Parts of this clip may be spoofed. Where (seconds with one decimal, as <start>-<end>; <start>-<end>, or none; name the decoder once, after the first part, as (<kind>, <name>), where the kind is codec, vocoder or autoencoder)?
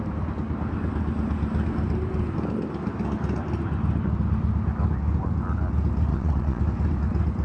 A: 6.1-6.6 (vocoder, WaveNeXt)